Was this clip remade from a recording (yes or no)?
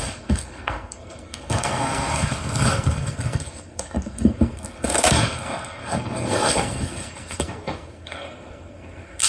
yes